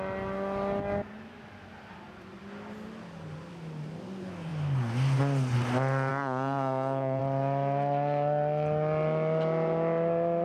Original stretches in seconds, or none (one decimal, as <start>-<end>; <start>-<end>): 0.0-6.1; 7.2-10.4